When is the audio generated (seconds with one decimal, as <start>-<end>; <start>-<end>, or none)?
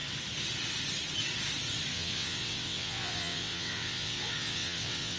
1.9-5.2